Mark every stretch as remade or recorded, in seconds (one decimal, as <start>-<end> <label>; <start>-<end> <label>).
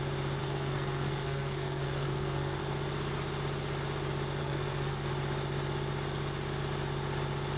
0.0-0.4 recorded; 0.4-2.6 remade; 2.6-4.4 recorded; 4.4-5.1 remade; 5.1-7.6 recorded